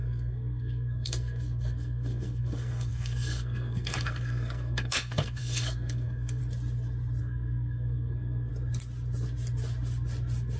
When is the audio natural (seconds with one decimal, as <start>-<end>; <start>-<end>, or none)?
6.4-7.2; 8.5-10.6